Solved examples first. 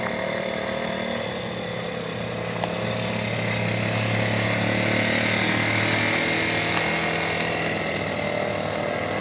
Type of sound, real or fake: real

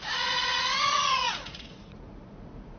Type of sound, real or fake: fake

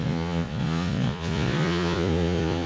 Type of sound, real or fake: fake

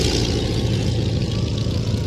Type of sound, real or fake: fake